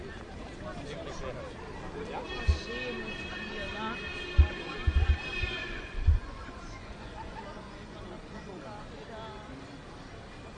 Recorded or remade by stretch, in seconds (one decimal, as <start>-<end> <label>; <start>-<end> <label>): 0.0-5.3 recorded; 5.3-8.6 remade; 8.6-10.6 recorded